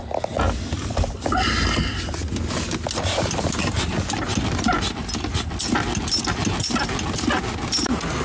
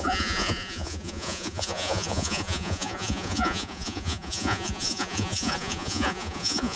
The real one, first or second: first